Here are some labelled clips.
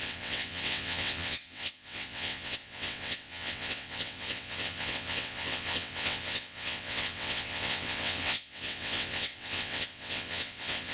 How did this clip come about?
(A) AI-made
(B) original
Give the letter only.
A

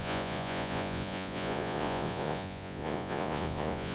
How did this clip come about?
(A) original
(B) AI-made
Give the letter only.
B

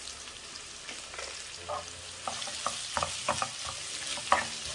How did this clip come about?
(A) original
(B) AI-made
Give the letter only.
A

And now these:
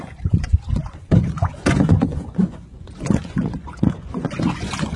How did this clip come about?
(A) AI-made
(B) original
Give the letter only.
A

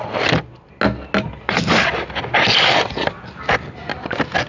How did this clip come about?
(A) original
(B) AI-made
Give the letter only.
A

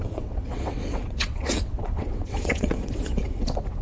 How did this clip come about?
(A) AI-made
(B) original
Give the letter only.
A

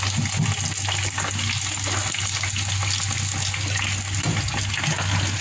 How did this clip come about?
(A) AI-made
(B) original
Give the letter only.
B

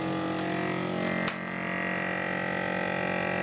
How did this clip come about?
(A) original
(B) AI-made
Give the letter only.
A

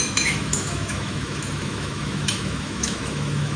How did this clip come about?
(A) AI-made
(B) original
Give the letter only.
A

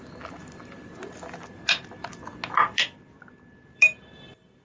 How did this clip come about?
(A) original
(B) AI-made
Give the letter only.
A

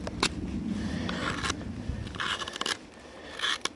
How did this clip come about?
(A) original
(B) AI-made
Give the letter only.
A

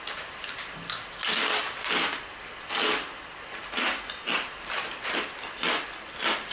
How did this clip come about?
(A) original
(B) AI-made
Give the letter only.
A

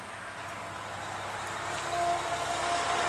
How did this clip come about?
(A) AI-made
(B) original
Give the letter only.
B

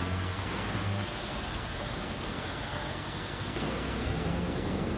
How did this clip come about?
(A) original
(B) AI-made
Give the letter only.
B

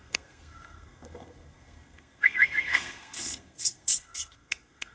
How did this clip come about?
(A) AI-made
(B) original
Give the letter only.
A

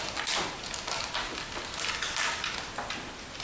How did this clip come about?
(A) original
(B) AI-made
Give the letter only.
A